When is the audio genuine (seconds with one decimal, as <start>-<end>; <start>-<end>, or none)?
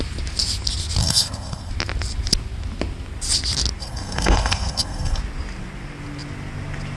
0.0-1.0; 1.7-3.8; 5.2-7.0